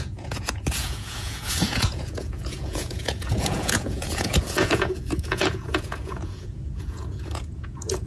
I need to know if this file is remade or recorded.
remade